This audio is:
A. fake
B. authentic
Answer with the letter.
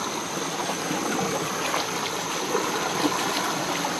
B